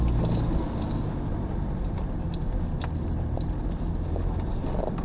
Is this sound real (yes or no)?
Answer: yes